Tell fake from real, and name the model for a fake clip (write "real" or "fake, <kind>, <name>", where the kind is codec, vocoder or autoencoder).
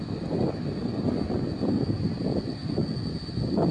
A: real